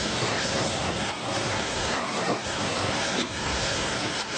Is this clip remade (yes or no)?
yes